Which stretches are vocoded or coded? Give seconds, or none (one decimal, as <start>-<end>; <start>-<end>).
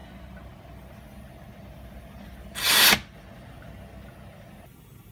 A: none